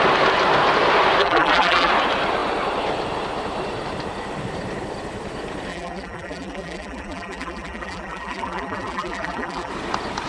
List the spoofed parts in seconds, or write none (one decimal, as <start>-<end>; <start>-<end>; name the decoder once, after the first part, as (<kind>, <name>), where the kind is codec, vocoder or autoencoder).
1.2-1.9 (vocoder, BigVGAN v2); 5.7-9.7